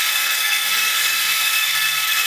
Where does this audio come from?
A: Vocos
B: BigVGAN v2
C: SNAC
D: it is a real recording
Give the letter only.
C